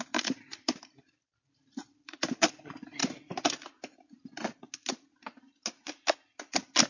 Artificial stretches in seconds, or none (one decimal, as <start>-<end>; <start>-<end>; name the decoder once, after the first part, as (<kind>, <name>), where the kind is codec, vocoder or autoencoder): 0.0-3.0 (vocoder, BigVGAN v2); 6.1-6.9